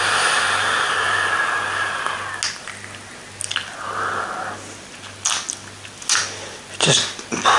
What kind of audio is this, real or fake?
real